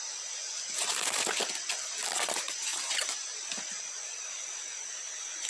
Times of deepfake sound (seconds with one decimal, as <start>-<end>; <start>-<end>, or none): none